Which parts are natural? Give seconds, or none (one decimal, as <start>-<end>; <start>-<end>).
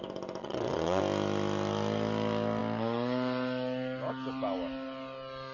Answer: 0.0-0.4; 1.0-5.5